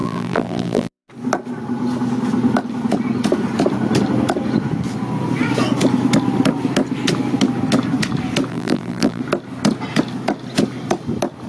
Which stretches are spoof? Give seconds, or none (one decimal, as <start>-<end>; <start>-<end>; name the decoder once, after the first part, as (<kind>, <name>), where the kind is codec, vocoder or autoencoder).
0.0-1.1 (vocoder, BigVGAN v2); 8.5-9.2